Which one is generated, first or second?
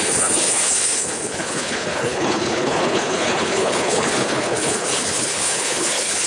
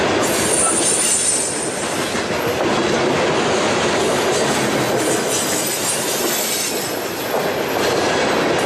first